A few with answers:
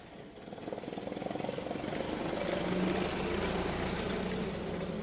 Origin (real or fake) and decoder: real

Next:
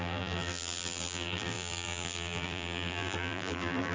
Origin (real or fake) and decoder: fake, vocoder, BigVGAN v2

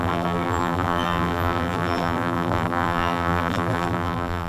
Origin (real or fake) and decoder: fake, vocoder, BigVGAN v2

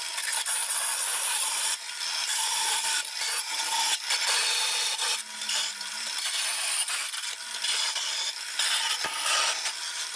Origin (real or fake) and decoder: real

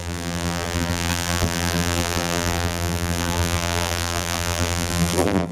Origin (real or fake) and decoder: fake, vocoder, BigVGAN v2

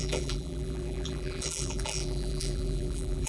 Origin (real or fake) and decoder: fake, vocoder, BigVGAN v2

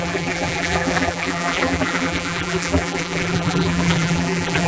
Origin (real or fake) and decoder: fake, vocoder, BigVGAN v2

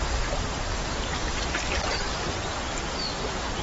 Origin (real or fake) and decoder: real